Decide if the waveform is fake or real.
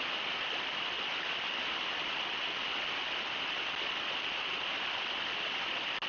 real